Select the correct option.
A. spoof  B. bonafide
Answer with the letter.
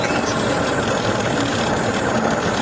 B